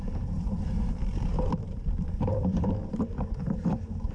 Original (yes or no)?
no